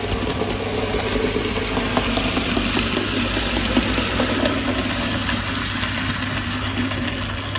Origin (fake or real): real